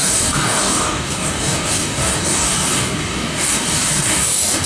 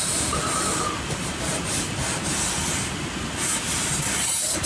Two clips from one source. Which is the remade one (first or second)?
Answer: first